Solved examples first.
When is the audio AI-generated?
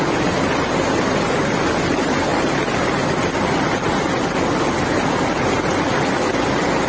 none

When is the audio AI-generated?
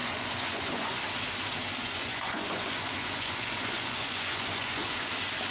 0.0-1.0 (vocoder, Vocos); 1.8-5.1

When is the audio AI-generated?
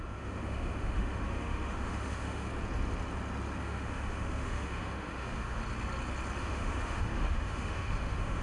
0.0-2.5 (autoencoder, DAC-VAE); 3.6-5.6; 6.4-8.4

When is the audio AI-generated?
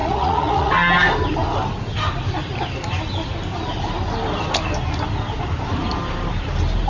0.0-0.7 (vocoder, Vocos)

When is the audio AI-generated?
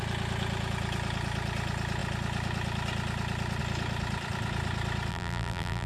5.1-5.9 (vocoder, BigVGAN v2)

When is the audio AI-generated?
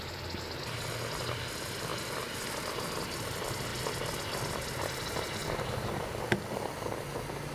none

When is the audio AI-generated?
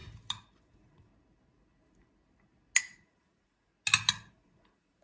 0.6-1.1 (vocoder, Vocos); 2.8-3.7; 4.3-5.0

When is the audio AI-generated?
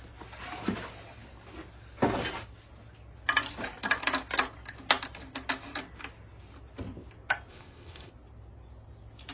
7.5-8.1 (codec, ZipCodec)